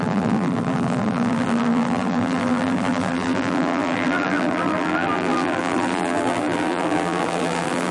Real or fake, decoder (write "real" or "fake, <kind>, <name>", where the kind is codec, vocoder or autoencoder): fake, vocoder, BigVGAN v2